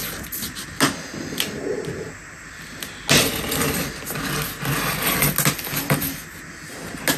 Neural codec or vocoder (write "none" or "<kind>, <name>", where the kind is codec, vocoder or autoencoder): none